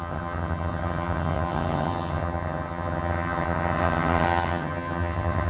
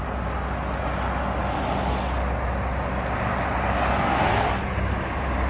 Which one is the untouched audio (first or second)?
second